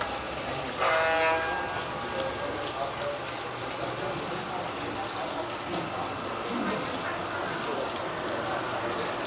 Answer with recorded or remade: recorded